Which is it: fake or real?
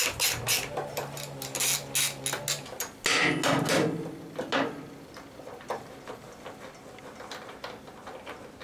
real